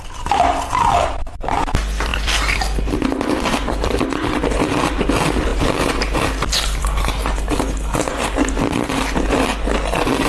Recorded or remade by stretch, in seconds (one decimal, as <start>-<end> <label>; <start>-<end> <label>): 0.0-2.1 recorded; 2.1-4.4 remade; 4.4-10.3 recorded